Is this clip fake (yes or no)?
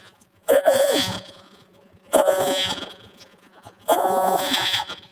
yes